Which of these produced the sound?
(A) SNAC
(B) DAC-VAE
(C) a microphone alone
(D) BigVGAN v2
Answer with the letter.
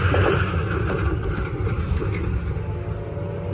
C